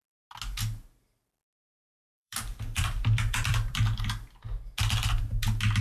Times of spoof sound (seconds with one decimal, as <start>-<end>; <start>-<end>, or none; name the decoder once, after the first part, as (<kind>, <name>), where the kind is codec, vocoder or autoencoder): 1.7-4.0 (vocoder, BigVGAN v2)

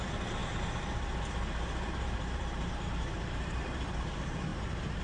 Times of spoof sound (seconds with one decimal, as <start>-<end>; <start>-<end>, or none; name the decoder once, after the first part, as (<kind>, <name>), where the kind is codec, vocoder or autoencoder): 0.0-5.0 (vocoder, BigVGAN v2)

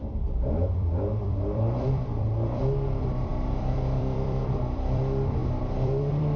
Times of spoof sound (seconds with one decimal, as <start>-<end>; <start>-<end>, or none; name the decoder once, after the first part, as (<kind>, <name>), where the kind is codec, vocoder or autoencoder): 0.0-6.4 (vocoder, BigVGAN v2)